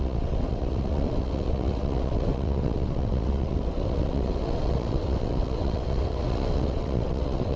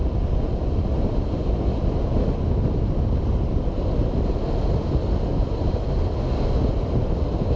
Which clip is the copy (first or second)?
first